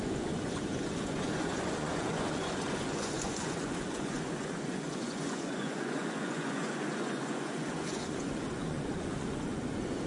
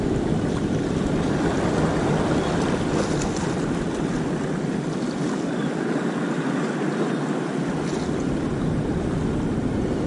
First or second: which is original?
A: second